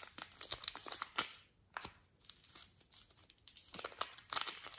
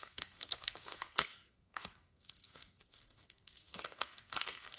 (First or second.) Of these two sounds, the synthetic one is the second